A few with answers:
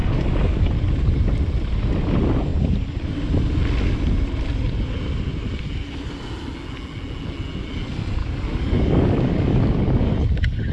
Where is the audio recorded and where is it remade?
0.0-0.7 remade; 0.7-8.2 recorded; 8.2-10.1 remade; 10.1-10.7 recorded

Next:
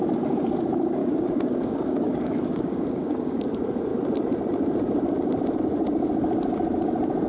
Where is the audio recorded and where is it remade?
0.0-1.0 recorded; 1.0-3.4 remade; 3.4-7.3 recorded

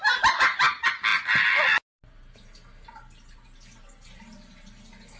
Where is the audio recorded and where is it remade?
0.0-5.2 recorded

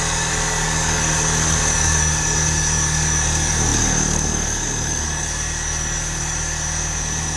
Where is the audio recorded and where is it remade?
0.0-7.4 remade